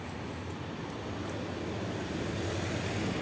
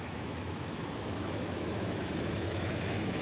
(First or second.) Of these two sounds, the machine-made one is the second